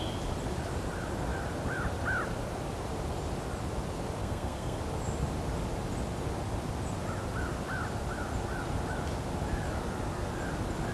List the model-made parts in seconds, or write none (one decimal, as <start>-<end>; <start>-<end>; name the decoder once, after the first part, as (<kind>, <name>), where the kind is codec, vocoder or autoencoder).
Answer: 4.2-4.8 (codec, SNAC)